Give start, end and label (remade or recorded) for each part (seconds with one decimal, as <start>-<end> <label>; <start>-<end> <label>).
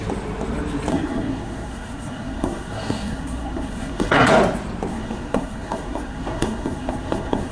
0.0-0.9 recorded; 0.9-4.3 remade; 4.3-4.9 recorded; 4.9-7.5 remade